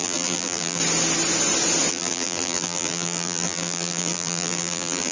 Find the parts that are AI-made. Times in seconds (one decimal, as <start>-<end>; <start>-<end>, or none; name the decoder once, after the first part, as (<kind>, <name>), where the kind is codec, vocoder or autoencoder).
0.0-0.8 (vocoder, BigVGAN v2); 1.9-5.1